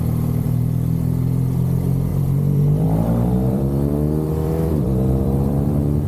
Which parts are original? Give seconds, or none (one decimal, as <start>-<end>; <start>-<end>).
0.0-2.1